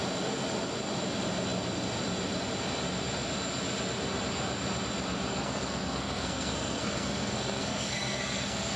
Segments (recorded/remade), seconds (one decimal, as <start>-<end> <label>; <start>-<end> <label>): 0.0-5.3 recorded; 5.3-8.8 remade